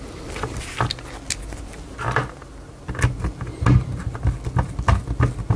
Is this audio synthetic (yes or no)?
no